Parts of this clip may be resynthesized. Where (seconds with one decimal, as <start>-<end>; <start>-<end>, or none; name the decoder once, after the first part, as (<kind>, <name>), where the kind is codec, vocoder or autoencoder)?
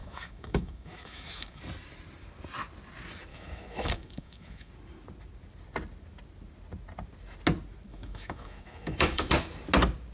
0.0-1.6 (autoencoder, DAC-VAE); 3.3-4.7; 7.9-9.3